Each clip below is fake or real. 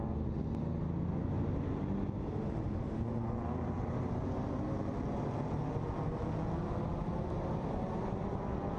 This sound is real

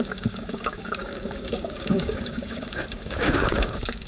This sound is fake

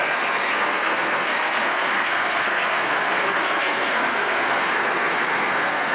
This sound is fake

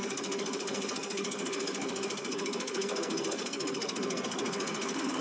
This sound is fake